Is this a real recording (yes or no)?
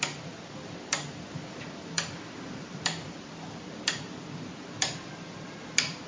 no